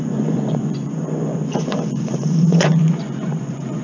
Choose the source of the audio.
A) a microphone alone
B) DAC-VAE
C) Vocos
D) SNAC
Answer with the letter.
C